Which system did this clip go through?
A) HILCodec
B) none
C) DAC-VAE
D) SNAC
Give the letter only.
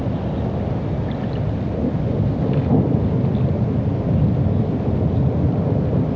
B